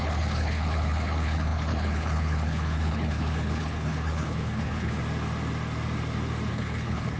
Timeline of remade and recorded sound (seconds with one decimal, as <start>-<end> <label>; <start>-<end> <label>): 0.0-5.0 remade; 5.0-6.5 recorded; 6.5-7.2 remade